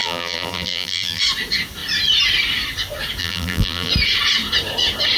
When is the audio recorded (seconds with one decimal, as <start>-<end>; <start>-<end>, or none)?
1.2-3.2; 3.9-5.2